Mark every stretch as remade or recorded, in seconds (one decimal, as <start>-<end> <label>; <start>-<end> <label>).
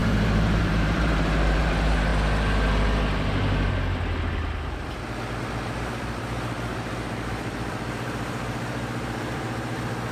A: 0.0-2.1 remade; 2.1-5.4 recorded; 5.4-10.1 remade